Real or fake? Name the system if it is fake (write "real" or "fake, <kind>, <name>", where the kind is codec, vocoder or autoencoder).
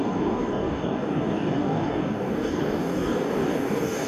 fake, codec, DAC